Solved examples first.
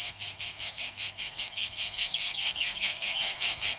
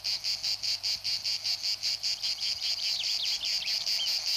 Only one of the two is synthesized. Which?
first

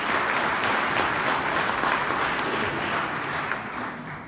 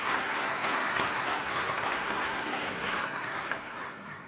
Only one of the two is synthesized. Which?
second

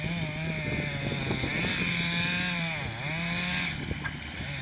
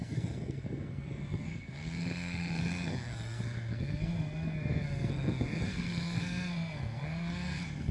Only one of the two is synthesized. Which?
second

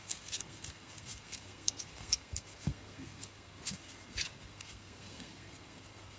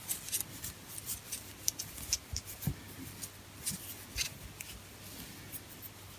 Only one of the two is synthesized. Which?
first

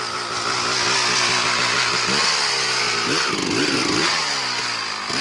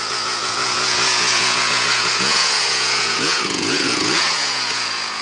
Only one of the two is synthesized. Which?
second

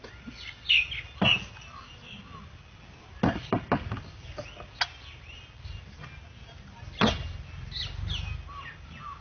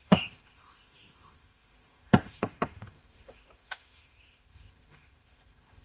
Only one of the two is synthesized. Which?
second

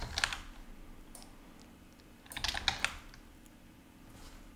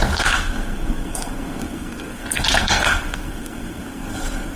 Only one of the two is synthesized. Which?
second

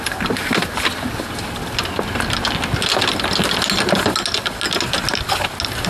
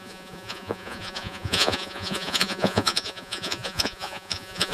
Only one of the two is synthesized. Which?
second